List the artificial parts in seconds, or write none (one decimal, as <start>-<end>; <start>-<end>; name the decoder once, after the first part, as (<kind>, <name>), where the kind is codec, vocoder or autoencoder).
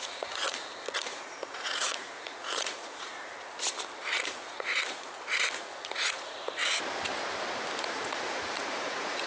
0.0-3.1 (vocoder, Vocos); 4.1-6.6; 7.9-9.3